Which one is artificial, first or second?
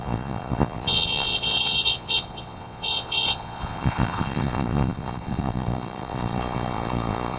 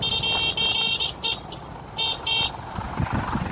first